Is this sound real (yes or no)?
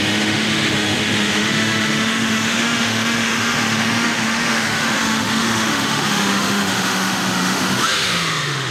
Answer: no